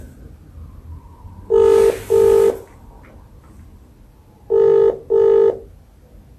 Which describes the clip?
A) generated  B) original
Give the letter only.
B